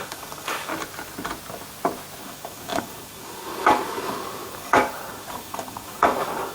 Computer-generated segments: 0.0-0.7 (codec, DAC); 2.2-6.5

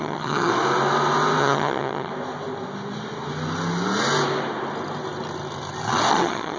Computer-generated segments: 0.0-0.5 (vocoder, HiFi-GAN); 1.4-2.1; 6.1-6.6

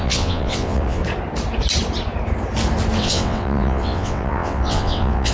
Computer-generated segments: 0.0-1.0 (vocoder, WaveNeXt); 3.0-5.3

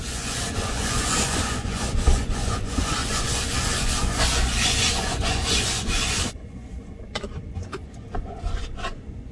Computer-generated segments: 0.0-9.3 (vocoder, Vocos)

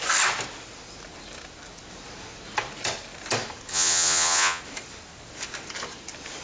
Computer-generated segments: 3.7-4.6 (vocoder, Vocos)

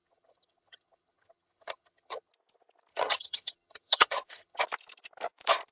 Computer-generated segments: 0.0-2.3 (vocoder, HiFi-GAN); 2.9-4.6

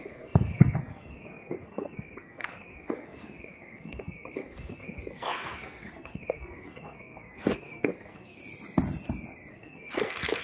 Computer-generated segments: 0.0-8.4 (codec, SNAC); 9.5-10.4

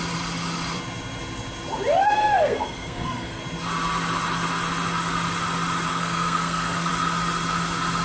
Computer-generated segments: 2.0-3.4 (codec, SNAC); 5.9-6.9